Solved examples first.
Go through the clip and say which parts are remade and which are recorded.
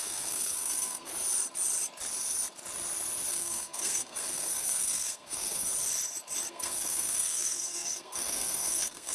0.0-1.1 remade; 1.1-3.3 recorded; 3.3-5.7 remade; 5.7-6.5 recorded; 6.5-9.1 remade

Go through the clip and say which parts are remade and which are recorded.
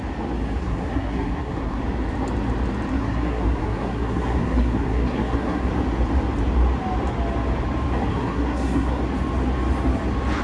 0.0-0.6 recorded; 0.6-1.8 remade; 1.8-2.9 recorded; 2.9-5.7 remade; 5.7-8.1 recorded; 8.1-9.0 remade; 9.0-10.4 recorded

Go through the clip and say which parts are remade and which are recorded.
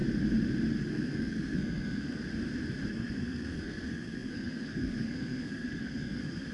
0.0-0.9 recorded; 0.9-2.2 remade; 2.2-2.9 recorded; 2.9-6.5 remade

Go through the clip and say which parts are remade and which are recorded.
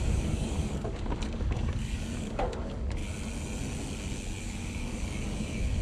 0.0-3.0 remade; 3.0-4.4 recorded; 4.4-5.8 remade